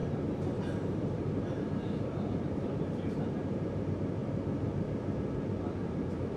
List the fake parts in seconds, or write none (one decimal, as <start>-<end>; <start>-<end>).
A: 0.0-3.8; 5.8-6.4